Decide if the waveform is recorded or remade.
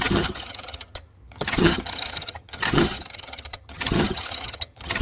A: remade